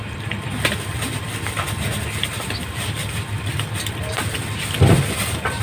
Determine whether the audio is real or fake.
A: real